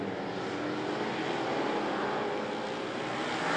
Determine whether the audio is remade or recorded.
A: recorded